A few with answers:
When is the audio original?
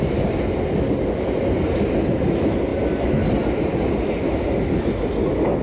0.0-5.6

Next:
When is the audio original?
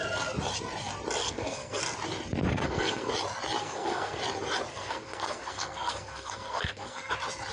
0.0-1.2; 1.8-2.5; 3.1-3.6; 4.2-4.7; 7.1-7.5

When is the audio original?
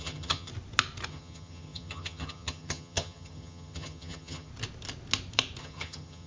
0.5-1.1; 4.5-5.6